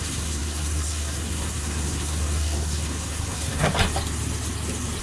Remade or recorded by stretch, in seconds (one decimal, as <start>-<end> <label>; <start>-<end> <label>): 0.0-3.7 remade; 3.7-5.0 recorded